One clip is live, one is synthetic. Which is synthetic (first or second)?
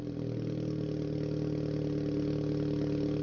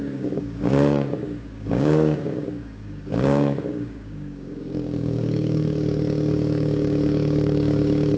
second